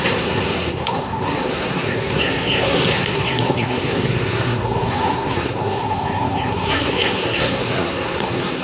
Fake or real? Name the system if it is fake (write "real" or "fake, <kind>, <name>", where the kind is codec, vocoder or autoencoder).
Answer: fake, codec, SNAC